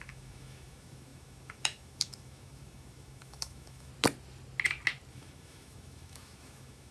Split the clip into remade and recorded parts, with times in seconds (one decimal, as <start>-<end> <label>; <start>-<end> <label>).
0.0-3.9 remade; 3.9-5.1 recorded; 5.1-6.9 remade

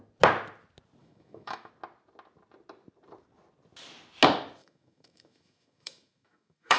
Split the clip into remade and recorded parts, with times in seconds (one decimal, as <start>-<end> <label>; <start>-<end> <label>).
0.0-1.0 recorded; 1.0-1.7 remade; 1.7-4.6 recorded; 4.6-6.8 remade